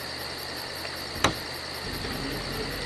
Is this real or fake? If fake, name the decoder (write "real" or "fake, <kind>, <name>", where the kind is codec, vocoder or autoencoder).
real